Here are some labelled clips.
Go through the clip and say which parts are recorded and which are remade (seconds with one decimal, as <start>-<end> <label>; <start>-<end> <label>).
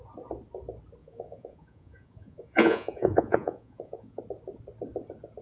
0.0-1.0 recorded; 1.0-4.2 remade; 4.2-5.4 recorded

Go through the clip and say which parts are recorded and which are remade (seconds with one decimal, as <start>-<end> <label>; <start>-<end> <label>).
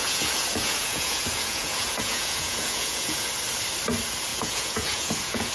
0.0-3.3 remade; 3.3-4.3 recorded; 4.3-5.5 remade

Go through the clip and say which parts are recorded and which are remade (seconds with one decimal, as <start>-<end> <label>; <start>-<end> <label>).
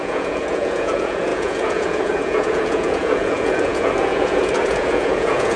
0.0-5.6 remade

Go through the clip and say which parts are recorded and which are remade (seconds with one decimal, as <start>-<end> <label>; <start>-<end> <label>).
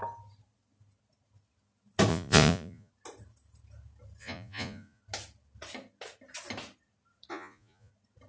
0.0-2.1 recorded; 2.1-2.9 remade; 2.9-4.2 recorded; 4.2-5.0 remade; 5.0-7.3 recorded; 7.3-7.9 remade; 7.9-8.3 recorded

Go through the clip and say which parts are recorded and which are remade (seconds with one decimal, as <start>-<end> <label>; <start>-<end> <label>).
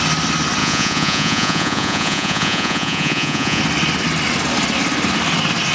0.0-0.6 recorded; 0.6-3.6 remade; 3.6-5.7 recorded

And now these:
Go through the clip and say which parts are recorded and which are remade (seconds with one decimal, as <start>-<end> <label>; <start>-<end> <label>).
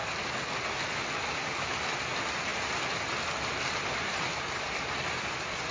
0.0-5.7 recorded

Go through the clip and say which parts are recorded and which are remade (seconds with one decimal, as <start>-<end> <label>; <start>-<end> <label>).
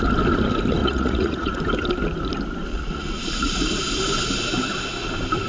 0.0-0.8 recorded; 0.8-1.6 remade; 1.6-2.7 recorded; 2.7-3.5 remade; 3.5-5.5 recorded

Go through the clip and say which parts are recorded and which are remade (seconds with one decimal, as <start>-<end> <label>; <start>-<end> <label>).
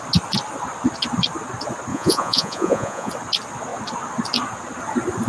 0.0-1.9 recorded; 1.9-3.1 remade; 3.1-5.3 recorded